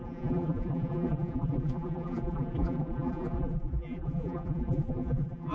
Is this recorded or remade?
remade